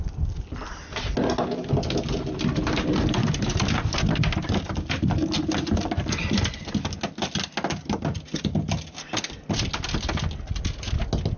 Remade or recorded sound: recorded